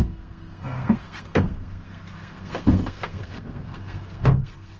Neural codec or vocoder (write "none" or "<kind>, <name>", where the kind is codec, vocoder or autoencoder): codec, SNAC